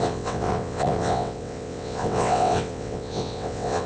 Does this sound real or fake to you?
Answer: fake